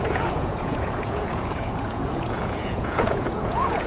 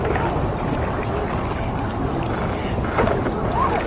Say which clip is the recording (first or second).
second